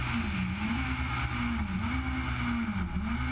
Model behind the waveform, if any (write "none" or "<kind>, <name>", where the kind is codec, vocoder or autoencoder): none